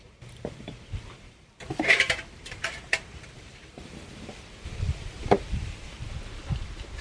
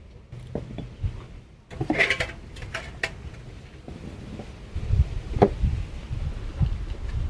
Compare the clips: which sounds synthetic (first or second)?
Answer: first